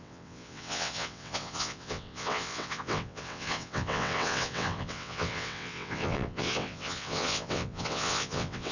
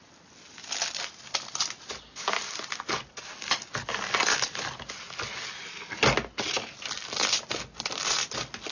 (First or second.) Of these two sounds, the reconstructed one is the first